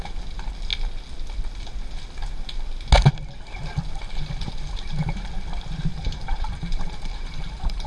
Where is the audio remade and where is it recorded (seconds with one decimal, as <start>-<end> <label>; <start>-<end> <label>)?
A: 0.0-5.9 recorded; 5.9-7.9 remade